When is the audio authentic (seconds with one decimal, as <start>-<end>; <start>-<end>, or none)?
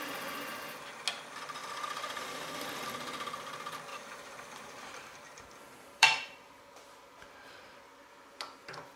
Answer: 0.0-3.9; 6.6-9.0